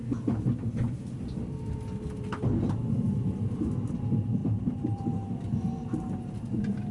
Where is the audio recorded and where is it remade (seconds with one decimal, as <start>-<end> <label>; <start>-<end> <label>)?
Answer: 0.0-4.4 recorded; 4.4-6.9 remade